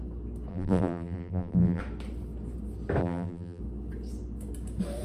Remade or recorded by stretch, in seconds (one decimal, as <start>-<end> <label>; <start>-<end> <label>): 0.0-0.5 recorded; 0.5-1.8 remade; 1.8-3.0 recorded; 3.0-3.6 remade; 3.6-5.0 recorded